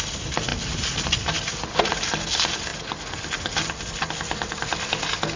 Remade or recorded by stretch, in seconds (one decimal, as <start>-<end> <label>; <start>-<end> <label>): 0.0-5.4 recorded